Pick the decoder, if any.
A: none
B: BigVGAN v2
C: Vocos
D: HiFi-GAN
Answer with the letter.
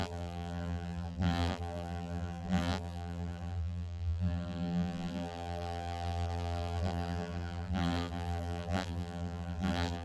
B